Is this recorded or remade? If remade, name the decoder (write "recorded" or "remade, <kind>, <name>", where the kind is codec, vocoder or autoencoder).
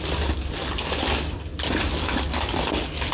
recorded